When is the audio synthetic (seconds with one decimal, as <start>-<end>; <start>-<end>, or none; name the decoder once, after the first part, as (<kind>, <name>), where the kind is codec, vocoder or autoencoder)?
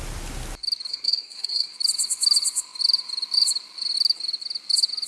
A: 0.9-1.7 (codec, SNAC)